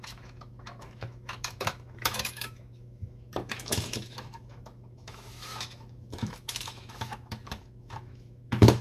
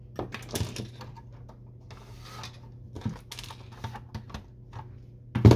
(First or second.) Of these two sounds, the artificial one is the first